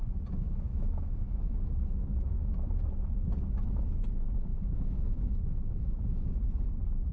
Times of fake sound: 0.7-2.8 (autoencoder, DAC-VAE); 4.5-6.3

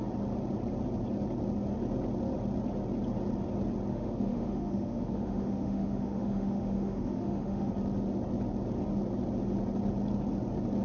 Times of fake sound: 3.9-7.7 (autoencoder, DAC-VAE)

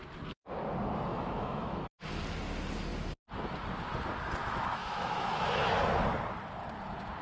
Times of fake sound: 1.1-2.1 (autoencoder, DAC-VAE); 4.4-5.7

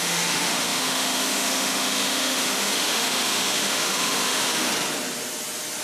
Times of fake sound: 0.0-4.7 (autoencoder, DAC-VAE)

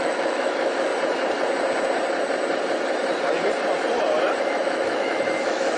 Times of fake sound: 0.0-0.9 (autoencoder, DAC-VAE); 4.4-5.8